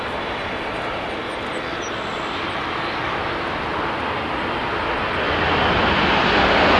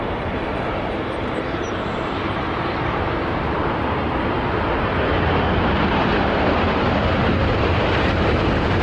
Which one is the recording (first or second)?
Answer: first